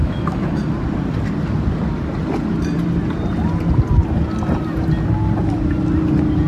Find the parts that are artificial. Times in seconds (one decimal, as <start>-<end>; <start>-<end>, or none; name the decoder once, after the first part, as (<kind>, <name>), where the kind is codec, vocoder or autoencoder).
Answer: 0.0-0.6 (autoencoder, DAC-VAE)